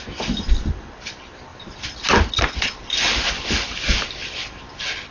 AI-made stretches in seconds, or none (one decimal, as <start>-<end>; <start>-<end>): none